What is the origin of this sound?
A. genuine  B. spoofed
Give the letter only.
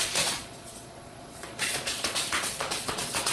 B